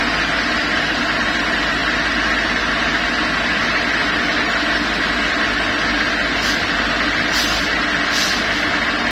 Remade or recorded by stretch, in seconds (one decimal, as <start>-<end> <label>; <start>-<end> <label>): 0.0-9.1 recorded